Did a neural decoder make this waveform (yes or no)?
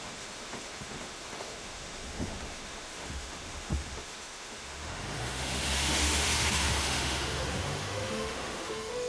yes